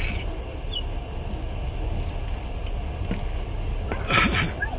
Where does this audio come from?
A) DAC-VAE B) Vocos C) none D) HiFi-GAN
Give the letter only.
C